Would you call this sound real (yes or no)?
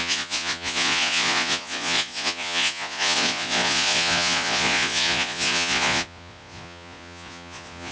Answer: no